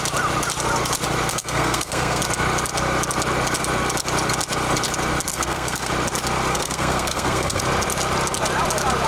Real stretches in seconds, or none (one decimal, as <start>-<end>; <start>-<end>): 0.0-1.3; 2.2-5.3; 5.9-6.5; 7.6-9.1